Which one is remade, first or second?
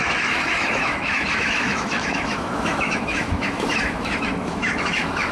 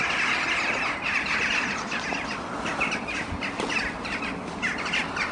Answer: first